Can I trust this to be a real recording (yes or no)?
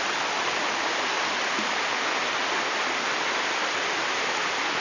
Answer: yes